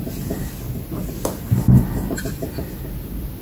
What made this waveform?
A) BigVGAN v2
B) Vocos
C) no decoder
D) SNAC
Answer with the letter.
C